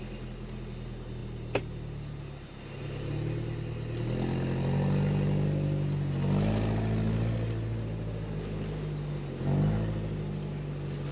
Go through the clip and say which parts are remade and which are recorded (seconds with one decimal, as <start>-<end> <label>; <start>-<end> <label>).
0.0-1.2 recorded; 1.2-2.8 remade; 2.8-11.1 recorded